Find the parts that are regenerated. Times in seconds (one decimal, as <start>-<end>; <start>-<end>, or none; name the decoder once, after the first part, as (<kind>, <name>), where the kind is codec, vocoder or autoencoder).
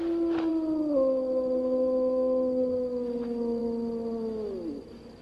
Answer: none